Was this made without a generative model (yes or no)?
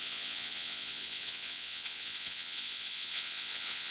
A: no